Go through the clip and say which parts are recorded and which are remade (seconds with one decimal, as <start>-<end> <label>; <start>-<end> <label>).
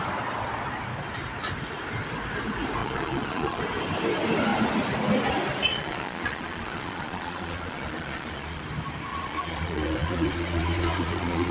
0.0-2.8 recorded; 2.8-3.6 remade; 3.6-5.7 recorded; 5.7-8.6 remade; 8.6-9.1 recorded; 9.1-11.5 remade